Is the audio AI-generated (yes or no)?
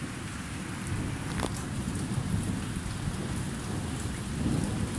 no